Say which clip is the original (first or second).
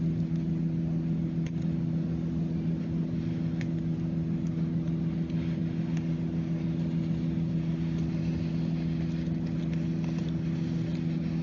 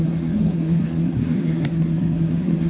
first